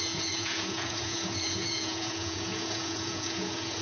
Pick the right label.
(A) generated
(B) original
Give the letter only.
A